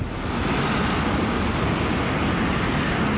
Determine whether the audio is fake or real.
real